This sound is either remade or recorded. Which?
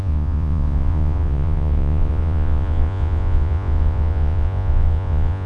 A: remade